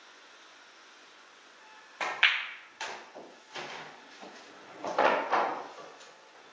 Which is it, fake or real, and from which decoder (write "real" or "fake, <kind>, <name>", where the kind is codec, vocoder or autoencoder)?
fake, vocoder, Vocos